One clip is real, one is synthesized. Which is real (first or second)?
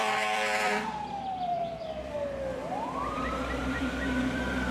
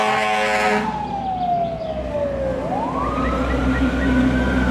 second